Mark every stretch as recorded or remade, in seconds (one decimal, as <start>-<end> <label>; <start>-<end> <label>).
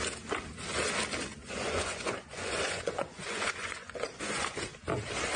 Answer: 0.0-1.4 recorded; 1.4-4.6 remade; 4.6-5.4 recorded